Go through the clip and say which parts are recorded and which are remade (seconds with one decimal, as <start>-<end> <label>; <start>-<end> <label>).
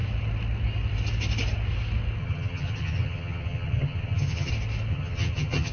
0.0-2.2 recorded; 2.2-4.5 remade; 4.5-4.9 recorded; 4.9-5.7 remade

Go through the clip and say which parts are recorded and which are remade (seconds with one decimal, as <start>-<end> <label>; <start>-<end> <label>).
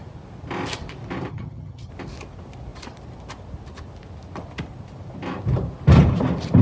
0.0-1.3 recorded; 1.3-1.9 remade; 1.9-6.6 recorded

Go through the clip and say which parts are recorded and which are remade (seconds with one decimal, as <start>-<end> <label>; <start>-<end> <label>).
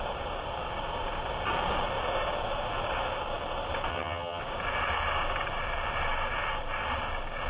0.0-3.9 recorded; 3.9-4.4 remade; 4.4-7.5 recorded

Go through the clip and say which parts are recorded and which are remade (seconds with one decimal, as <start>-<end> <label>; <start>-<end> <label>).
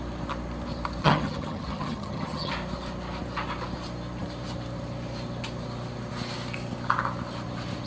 0.0-1.0 recorded; 1.0-2.5 remade; 2.5-7.9 recorded